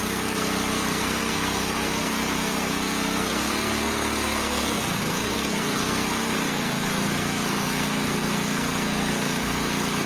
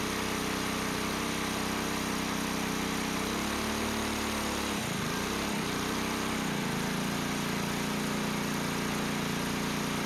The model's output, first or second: first